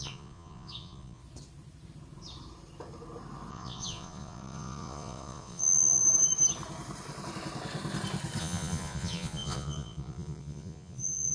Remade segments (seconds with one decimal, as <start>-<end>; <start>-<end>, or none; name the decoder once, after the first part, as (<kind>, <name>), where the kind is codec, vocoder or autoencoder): 0.0-1.2 (vocoder, Vocos); 3.5-6.0; 8.4-11.3